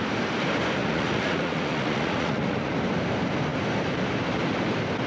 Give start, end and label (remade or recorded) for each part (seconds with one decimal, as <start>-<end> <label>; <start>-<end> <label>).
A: 0.0-0.8 recorded; 0.8-2.7 remade; 2.7-5.1 recorded

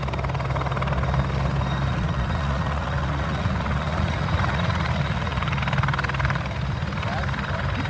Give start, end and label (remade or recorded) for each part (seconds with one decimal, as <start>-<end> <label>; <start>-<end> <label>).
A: 0.0-1.9 recorded; 1.9-5.6 remade; 5.6-7.9 recorded

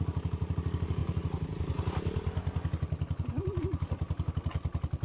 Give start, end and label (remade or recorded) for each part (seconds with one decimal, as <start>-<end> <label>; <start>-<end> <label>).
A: 0.0-5.0 recorded

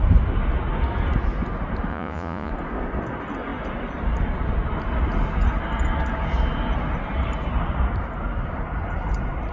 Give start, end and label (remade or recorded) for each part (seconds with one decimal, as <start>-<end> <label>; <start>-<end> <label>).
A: 0.0-1.9 recorded; 1.9-2.5 remade; 2.5-9.5 recorded